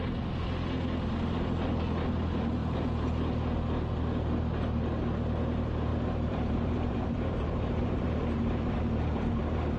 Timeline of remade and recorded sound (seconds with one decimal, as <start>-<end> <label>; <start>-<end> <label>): 0.0-5.9 recorded; 5.9-9.4 remade; 9.4-9.8 recorded